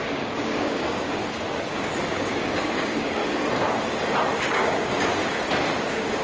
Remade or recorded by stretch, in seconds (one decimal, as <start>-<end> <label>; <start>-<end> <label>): 0.0-1.2 remade; 1.2-2.1 recorded; 2.1-3.2 remade; 3.2-4.4 recorded; 4.4-5.2 remade; 5.2-5.8 recorded; 5.8-6.2 remade

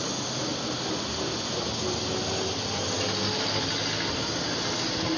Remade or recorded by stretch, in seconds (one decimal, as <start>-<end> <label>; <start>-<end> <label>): 0.0-5.2 recorded

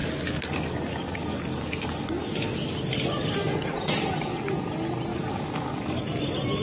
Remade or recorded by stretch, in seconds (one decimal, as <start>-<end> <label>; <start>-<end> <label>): 0.0-2.7 remade; 2.7-5.1 recorded; 5.1-6.0 remade; 6.0-6.6 recorded

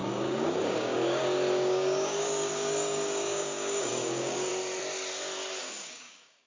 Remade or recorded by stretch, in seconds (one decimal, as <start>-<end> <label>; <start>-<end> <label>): 0.0-4.5 remade; 4.5-5.6 recorded; 5.6-6.5 remade

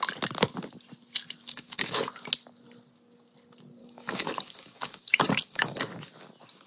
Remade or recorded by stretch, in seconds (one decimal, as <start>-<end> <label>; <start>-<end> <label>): 0.0-1.4 recorded; 1.4-2.1 remade; 2.1-3.8 recorded; 3.8-5.8 remade; 5.8-6.7 recorded